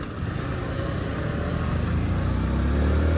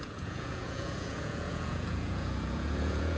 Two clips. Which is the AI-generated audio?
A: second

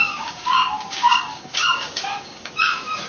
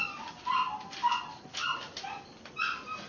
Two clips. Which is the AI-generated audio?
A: first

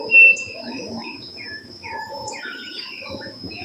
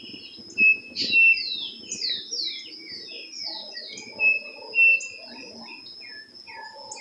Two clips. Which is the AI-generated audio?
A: first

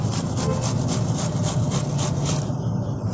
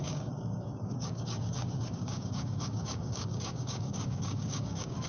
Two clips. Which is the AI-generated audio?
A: second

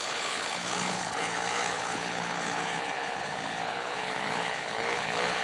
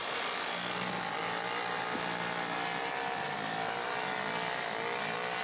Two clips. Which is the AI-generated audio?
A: first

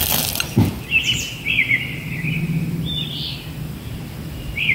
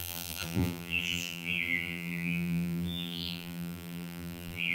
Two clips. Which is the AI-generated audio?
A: second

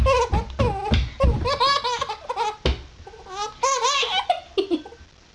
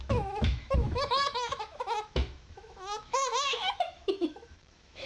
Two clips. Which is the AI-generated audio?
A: second